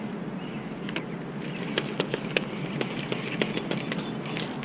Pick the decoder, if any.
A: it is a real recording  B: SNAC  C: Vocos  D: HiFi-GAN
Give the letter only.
A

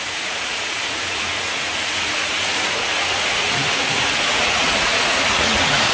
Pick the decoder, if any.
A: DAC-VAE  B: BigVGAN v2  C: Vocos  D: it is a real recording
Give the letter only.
C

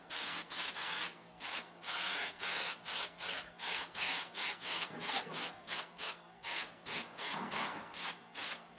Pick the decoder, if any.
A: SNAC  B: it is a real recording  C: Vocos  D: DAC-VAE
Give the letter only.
A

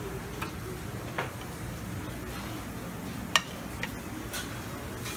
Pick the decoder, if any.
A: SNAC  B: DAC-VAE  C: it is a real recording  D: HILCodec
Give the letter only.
C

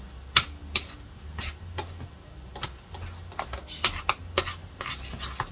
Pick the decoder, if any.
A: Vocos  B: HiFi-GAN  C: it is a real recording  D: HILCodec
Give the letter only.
C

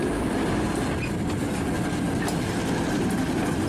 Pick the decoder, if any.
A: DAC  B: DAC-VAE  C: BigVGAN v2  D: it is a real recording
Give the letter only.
D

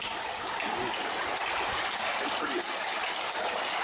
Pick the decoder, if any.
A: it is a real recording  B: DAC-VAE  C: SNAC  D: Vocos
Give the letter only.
A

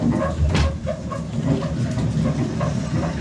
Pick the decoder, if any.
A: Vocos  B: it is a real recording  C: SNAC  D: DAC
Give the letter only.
B